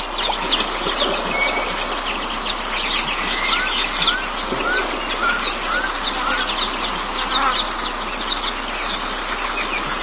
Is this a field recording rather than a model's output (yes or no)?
yes